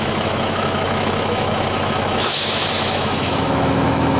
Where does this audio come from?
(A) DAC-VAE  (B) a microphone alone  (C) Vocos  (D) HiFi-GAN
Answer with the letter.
A